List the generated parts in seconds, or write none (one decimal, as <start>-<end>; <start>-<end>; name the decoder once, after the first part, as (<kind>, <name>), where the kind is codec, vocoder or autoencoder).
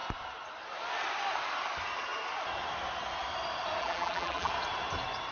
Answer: 3.8-4.5 (vocoder, BigVGAN v2)